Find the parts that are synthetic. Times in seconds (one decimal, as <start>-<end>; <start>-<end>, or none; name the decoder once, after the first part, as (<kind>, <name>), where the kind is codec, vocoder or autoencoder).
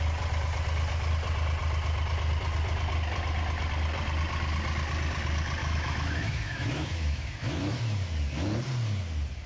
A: 5.6-7.8 (autoencoder, DAC-VAE)